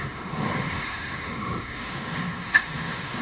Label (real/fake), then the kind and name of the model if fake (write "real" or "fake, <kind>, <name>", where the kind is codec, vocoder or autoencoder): fake, autoencoder, DAC-VAE